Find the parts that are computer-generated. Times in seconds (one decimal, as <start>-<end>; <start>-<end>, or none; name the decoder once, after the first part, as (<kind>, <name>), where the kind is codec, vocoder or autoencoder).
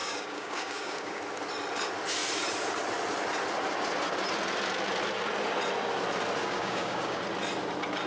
0.0-1.2 (codec, DAC); 6.4-7.2